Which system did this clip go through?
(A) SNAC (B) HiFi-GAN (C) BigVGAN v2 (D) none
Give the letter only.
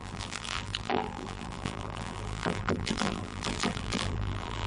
C